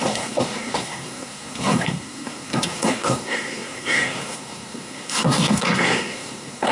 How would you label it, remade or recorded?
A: remade